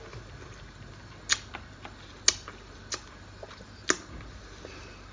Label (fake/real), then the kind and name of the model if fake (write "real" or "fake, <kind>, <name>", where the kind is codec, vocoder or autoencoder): real